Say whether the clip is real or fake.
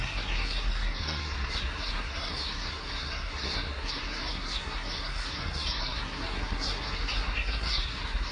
fake